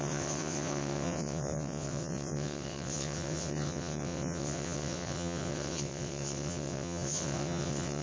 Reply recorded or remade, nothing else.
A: remade